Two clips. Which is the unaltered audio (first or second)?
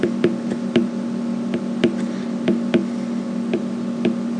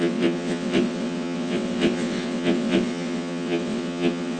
first